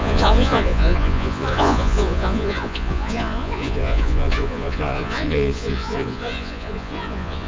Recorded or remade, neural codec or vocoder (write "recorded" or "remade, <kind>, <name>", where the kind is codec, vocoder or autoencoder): remade, vocoder, Vocos